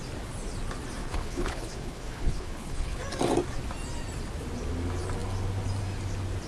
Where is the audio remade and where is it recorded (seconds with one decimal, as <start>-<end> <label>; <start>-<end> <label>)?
0.0-1.0 recorded; 1.0-3.0 remade; 3.0-6.5 recorded

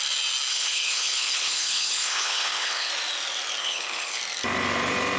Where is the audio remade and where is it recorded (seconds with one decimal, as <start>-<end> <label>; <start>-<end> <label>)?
0.0-0.5 recorded; 0.5-2.9 remade; 2.9-3.6 recorded; 3.6-4.2 remade; 4.2-5.2 recorded

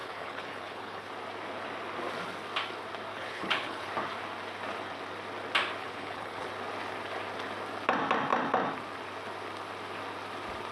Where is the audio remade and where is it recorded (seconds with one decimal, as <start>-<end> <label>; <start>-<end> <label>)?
0.0-1.1 remade; 1.1-3.1 recorded; 3.1-3.9 remade; 3.9-5.8 recorded; 5.8-6.5 remade; 6.5-10.7 recorded